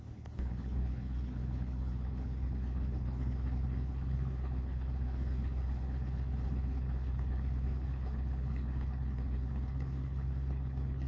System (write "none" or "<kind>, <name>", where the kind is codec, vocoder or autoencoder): codec, HILCodec